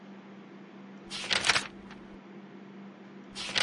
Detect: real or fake real